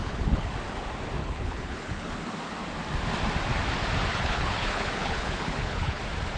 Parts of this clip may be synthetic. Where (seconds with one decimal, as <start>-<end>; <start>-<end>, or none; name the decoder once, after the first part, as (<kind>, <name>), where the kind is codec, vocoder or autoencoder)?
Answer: 0.0-0.5 (codec, HILCodec); 1.2-2.1; 4.1-6.0